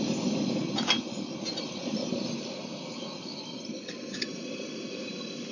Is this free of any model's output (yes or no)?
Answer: yes